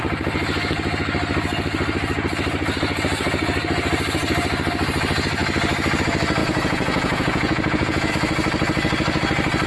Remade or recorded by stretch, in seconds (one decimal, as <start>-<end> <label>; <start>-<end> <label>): 0.0-6.4 recorded; 6.4-8.1 remade; 8.1-9.7 recorded